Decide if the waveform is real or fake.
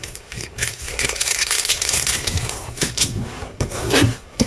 fake